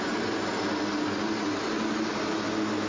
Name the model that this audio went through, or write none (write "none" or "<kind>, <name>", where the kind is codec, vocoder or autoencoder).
none